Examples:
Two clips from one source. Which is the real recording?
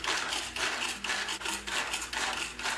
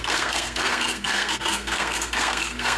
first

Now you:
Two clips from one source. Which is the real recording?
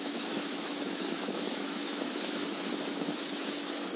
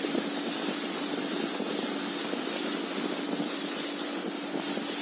second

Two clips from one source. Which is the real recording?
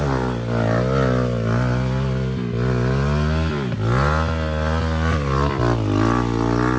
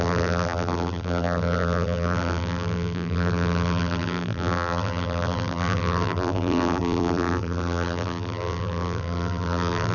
first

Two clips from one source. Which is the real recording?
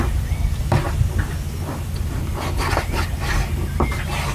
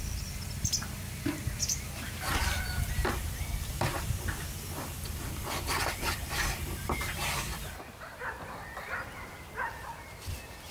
first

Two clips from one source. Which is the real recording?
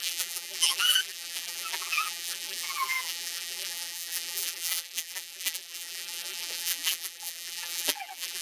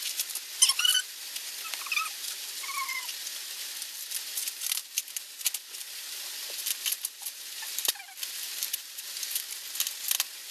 second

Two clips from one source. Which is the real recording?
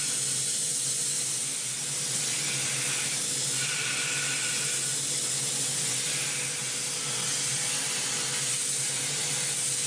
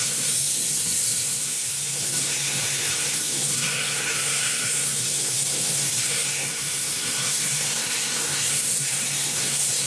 first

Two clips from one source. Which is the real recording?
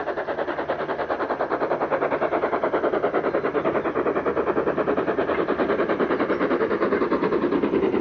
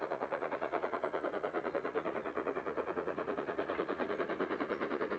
first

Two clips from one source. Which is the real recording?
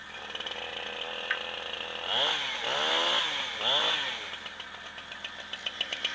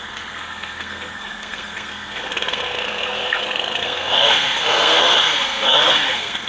first